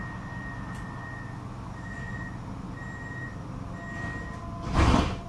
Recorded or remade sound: recorded